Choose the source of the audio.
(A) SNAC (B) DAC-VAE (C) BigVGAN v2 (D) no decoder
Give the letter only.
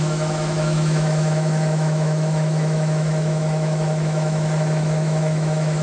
B